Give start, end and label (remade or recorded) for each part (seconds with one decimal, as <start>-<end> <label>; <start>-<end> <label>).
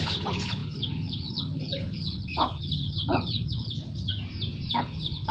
0.0-4.1 remade; 4.1-4.7 recorded; 4.7-5.3 remade